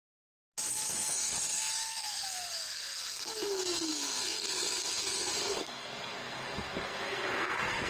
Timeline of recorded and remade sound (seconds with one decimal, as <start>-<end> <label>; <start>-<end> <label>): 0.0-0.7 recorded; 0.7-7.9 remade